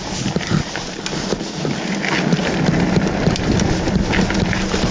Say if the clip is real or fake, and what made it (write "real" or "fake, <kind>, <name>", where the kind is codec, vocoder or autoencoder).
real